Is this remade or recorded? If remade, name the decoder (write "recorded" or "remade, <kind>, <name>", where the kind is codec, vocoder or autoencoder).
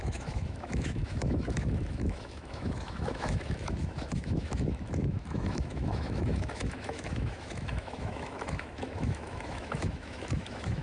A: remade, autoencoder, DAC-VAE